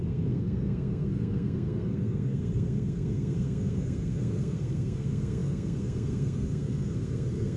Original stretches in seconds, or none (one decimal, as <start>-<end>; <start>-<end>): none